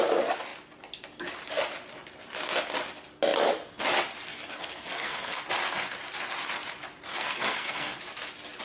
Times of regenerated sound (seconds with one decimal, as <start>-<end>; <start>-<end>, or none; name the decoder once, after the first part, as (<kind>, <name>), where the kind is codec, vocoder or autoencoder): 4.3-5.4 (codec, SNAC); 7.1-8.0